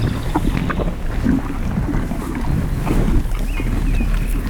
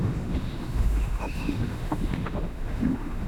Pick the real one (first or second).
first